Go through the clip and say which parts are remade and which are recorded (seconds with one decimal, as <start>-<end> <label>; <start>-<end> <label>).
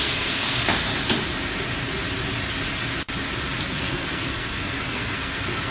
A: 0.0-0.9 remade; 0.9-3.7 recorded; 3.7-5.7 remade